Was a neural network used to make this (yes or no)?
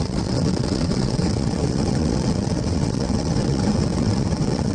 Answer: yes